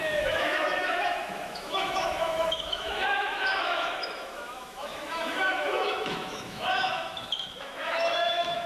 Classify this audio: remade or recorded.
remade